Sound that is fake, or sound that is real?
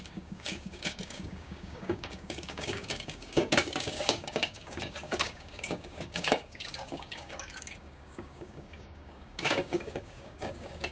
fake